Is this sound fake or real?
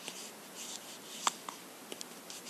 real